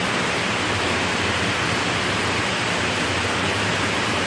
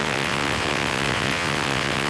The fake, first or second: second